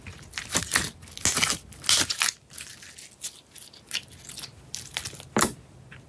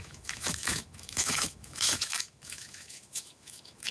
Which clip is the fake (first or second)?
second